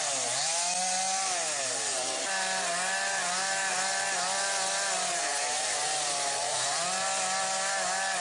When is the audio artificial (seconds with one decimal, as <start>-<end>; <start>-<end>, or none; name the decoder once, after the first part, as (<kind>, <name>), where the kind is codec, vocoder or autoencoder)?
none